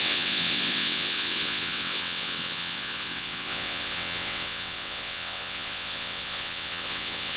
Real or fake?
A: fake